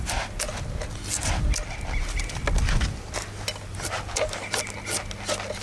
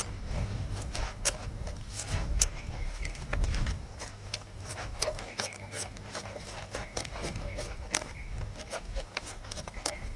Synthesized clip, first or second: second